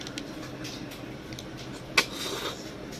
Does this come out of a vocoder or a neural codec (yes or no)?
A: no